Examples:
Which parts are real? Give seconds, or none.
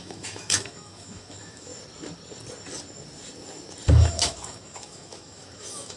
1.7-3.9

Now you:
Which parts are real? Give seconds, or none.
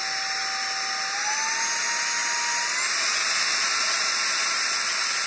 0.0-5.3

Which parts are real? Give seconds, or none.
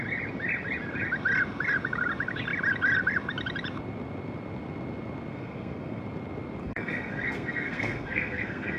0.0-5.3; 6.0-6.6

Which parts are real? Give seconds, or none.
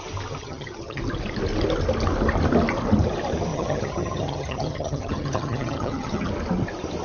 0.0-0.4; 1.0-3.5; 6.3-7.0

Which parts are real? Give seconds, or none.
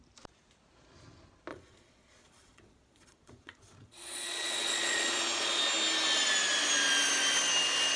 0.0-1.5; 5.6-8.0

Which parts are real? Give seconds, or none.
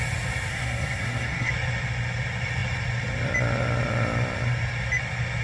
0.0-0.5; 1.5-5.4